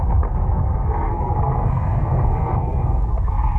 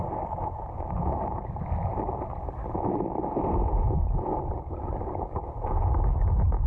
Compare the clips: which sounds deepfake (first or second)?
first